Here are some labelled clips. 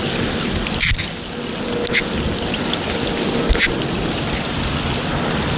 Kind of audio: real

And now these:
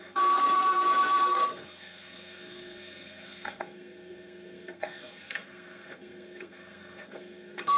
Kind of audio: fake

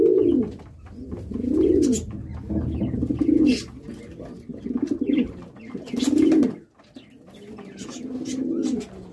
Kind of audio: real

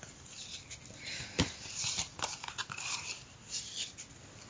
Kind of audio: real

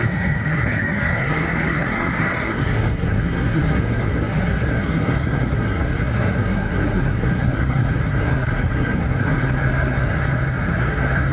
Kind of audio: fake